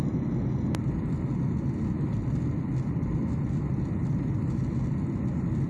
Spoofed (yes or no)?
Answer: no